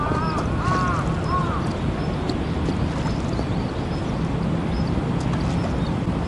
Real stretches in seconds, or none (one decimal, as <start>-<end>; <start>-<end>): 0.0-6.3